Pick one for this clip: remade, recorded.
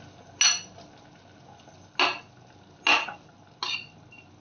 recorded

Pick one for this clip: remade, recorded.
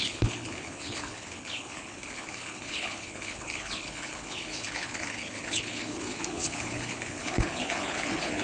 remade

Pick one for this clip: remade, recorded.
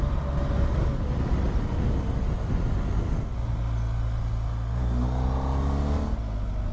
recorded